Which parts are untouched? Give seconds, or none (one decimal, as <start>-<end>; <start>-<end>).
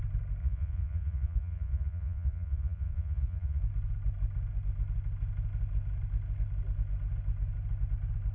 0.0-0.4; 3.6-8.3